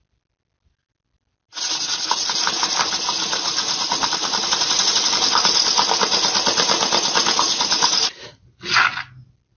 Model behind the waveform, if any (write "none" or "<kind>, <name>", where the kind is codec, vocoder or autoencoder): none